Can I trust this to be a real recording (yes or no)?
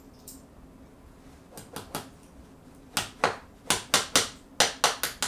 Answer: yes